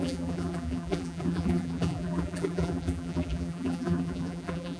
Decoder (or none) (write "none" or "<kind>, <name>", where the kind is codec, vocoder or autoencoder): vocoder, BigVGAN v2